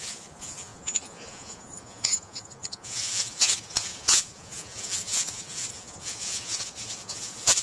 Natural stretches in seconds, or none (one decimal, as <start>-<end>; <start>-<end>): none